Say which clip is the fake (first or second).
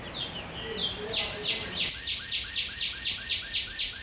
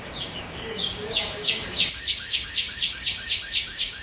second